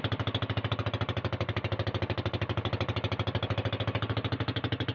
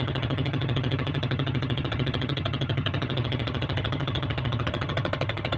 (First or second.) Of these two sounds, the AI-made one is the second